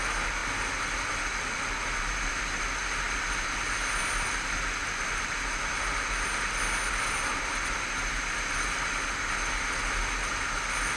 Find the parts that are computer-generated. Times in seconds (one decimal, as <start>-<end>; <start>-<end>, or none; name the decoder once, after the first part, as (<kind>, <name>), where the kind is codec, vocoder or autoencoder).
none